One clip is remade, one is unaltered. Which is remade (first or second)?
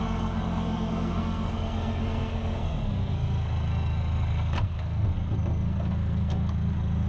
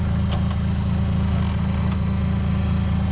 first